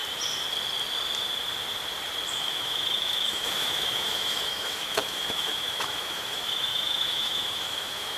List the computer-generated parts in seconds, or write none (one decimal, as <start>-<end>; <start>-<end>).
2.3-8.2